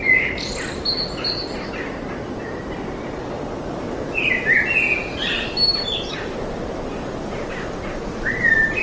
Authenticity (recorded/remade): recorded